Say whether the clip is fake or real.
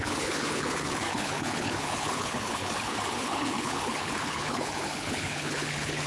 fake